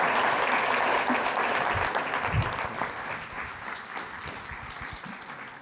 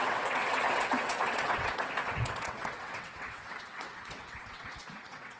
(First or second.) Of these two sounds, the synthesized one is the second